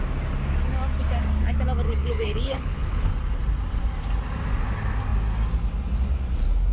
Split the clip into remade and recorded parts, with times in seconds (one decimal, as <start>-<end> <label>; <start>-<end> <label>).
0.0-2.0 recorded; 2.0-3.1 remade; 3.1-6.7 recorded